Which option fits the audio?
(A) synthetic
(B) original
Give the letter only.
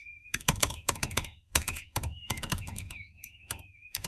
A